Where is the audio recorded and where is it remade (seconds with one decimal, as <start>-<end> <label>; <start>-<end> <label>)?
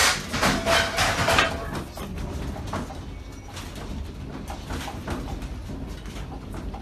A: 0.0-6.8 recorded